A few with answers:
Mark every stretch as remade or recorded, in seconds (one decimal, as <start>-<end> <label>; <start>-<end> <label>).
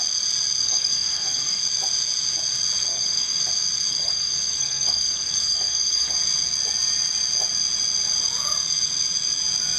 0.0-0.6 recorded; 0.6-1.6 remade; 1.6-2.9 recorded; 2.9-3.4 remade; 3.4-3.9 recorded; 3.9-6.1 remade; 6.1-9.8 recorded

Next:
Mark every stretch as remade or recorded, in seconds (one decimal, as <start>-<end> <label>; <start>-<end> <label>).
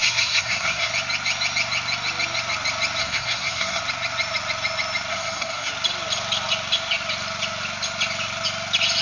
0.0-0.9 remade; 0.9-3.0 recorded; 3.0-3.8 remade; 3.8-5.1 recorded; 5.1-5.7 remade; 5.7-9.0 recorded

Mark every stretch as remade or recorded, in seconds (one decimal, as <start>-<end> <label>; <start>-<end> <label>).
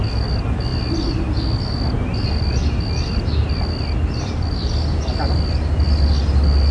0.0-6.7 recorded